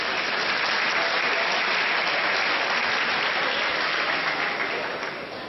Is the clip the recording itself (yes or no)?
yes